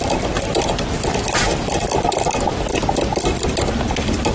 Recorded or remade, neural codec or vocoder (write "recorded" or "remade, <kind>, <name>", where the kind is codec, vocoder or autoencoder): recorded